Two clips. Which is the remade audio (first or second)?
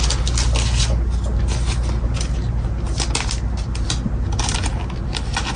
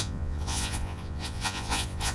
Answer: second